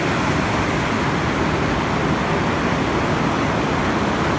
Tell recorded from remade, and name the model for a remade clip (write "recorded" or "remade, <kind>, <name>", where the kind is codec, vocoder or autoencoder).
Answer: recorded